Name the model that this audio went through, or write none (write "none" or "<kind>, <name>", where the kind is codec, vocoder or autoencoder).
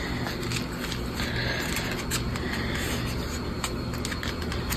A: none